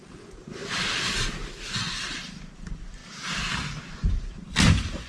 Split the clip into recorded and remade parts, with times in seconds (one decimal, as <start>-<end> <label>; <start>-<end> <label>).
0.0-0.6 remade; 0.6-1.6 recorded; 1.6-3.0 remade; 3.0-4.1 recorded; 4.1-5.1 remade